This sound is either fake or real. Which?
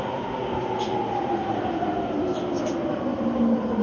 real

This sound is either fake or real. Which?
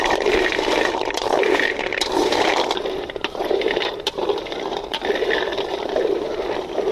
fake